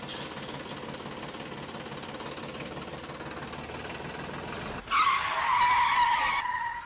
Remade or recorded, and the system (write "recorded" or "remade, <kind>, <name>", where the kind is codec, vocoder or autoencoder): recorded